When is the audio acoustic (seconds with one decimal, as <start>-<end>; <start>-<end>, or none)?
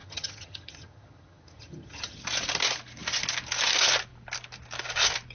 2.2-5.3